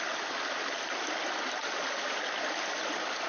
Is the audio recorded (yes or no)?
yes